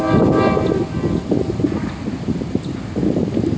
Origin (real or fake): real